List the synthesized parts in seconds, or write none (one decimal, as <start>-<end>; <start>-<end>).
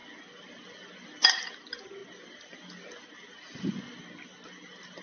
none